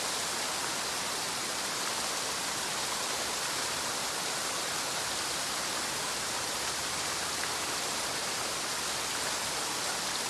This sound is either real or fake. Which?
real